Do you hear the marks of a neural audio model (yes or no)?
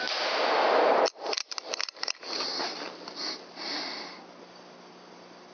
no